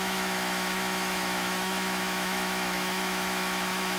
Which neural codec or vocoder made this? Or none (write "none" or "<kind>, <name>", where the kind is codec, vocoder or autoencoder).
autoencoder, DAC-VAE